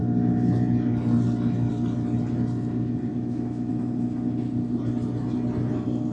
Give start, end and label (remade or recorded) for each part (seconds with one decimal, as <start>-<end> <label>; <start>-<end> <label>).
0.0-3.1 recorded; 3.1-3.7 remade; 3.7-6.1 recorded